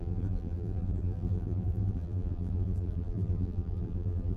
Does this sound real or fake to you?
fake